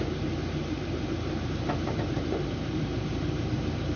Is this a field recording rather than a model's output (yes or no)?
no